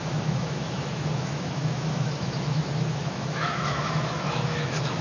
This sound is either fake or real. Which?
fake